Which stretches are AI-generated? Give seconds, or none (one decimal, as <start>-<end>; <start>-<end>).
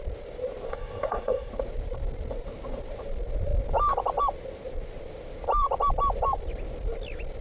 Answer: 0.7-1.5